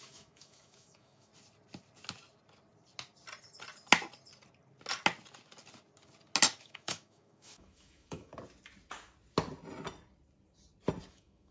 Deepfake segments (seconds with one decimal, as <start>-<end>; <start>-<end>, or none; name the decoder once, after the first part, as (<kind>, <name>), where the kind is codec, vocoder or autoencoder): 0.0-1.3 (autoencoder, DAC-VAE); 6.6-8.3; 11.1-11.5